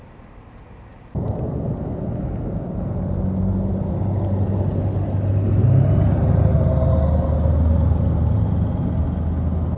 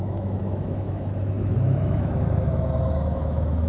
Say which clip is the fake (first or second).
second